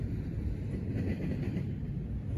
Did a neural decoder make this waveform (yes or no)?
no